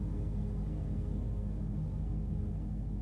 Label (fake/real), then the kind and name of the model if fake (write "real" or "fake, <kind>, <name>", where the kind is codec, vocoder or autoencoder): fake, codec, SNAC